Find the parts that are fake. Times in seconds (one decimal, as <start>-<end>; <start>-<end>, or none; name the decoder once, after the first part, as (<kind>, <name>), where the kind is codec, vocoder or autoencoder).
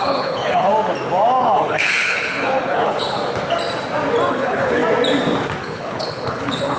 0.0-0.7 (codec, HILCodec); 1.4-3.2; 4.3-4.8; 5.6-6.8